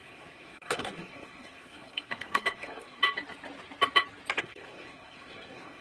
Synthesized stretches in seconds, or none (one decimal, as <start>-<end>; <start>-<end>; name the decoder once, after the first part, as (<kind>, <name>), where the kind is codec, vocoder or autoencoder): 0.0-3.0 (codec, SNAC); 4.4-5.8